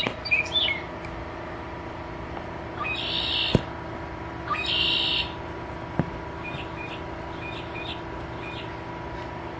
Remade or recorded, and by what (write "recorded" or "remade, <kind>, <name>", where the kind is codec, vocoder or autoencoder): recorded